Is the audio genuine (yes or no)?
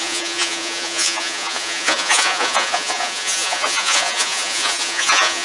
no